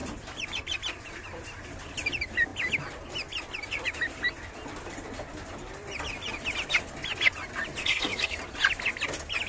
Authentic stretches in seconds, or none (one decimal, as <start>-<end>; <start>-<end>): 0.0-7.8; 8.4-9.5